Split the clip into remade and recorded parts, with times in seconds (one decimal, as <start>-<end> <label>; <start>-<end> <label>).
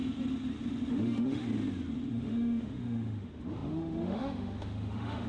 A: 0.0-0.9 recorded; 0.9-1.4 remade; 1.4-2.1 recorded; 2.1-5.3 remade